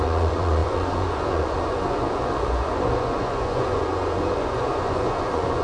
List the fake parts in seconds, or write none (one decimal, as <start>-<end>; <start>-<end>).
0.0-5.6